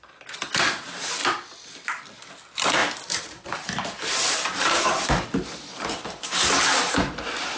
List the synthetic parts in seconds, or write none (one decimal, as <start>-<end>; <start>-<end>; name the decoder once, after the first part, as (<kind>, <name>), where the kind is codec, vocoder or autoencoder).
2.8-7.6 (vocoder, BigVGAN v2)